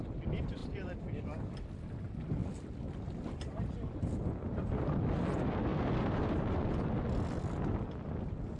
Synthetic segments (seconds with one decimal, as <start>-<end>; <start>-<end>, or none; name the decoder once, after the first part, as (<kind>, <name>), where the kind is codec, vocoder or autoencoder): 0.6-1.2 (vocoder, BigVGAN v2); 2.4-4.1; 5.7-6.3